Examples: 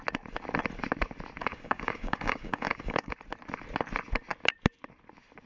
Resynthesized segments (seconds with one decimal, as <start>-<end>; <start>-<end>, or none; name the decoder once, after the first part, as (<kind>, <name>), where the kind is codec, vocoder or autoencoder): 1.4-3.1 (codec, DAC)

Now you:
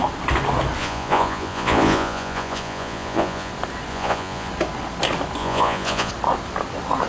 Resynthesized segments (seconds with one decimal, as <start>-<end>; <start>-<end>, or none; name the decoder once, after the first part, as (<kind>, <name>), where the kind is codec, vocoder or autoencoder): 0.8-3.5 (vocoder, Vocos); 3.9-4.5; 5.4-6.1

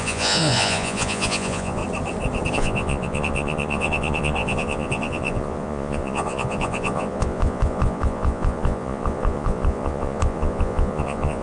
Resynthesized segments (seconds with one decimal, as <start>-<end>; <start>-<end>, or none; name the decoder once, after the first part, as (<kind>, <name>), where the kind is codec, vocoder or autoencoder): 0.0-1.8 (vocoder, Vocos); 2.5-11.4